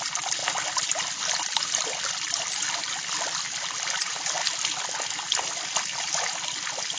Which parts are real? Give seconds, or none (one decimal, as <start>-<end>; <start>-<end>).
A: 0.4-1.2; 4.4-7.0